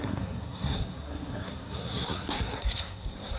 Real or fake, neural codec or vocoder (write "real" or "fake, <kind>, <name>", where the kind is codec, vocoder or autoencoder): fake, codec, SNAC